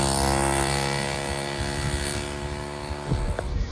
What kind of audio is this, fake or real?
real